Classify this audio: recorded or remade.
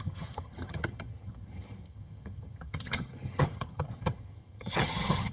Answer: remade